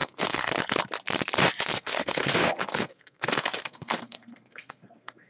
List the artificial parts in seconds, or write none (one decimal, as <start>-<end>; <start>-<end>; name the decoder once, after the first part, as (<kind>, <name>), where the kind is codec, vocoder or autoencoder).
0.0-0.5 (codec, SNAC); 1.7-5.3